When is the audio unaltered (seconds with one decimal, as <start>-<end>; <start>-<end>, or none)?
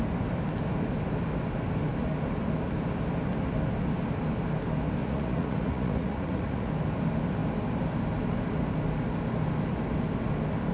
0.0-5.0; 6.7-10.7